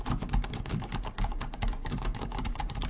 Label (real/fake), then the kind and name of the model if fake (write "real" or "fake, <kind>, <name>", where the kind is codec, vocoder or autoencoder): fake, codec, DAC